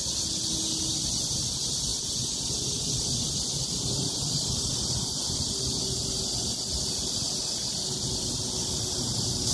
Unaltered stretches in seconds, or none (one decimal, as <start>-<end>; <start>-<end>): 0.0-9.5